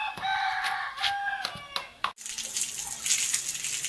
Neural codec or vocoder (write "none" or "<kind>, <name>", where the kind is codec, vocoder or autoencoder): none